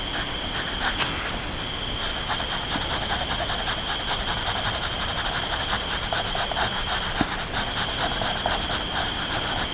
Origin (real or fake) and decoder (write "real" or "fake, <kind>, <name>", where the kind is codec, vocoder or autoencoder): real